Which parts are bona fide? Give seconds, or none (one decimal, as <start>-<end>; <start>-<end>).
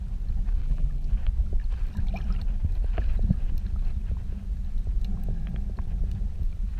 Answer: 0.0-0.6; 1.1-6.8